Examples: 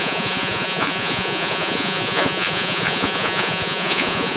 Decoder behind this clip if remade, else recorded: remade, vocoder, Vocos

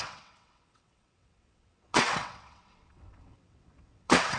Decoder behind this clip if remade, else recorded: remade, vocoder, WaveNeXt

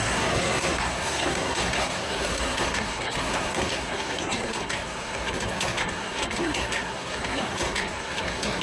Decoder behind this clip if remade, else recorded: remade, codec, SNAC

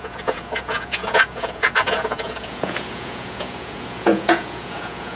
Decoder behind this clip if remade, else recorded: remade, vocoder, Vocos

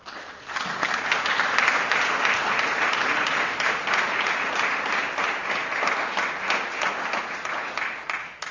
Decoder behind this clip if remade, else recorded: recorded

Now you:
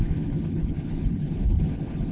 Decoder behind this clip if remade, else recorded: remade, codec, HILCodec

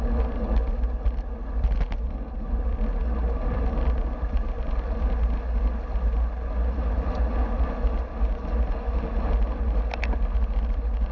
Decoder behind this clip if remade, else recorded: recorded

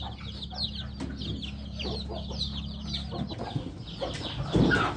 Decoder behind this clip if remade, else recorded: recorded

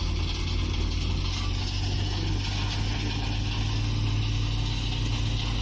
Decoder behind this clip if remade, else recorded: recorded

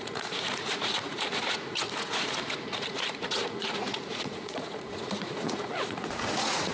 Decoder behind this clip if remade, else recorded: remade, vocoder, Vocos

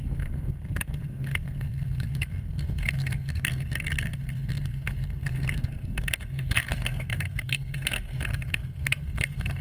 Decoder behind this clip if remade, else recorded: remade, codec, SNAC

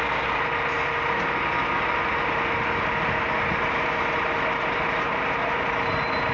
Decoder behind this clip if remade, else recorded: recorded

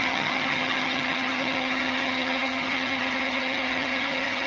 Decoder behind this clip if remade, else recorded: remade, vocoder, HiFi-GAN